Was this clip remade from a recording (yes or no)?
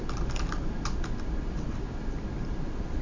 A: no